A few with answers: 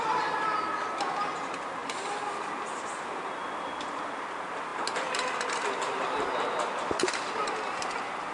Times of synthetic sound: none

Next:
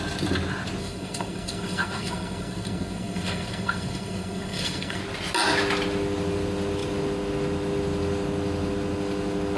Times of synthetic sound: 0.8-5.0 (codec, SNAC)

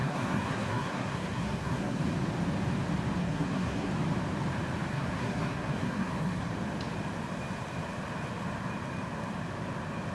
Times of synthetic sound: 0.0-2.0 (codec, SNAC); 3.2-3.9; 4.9-6.5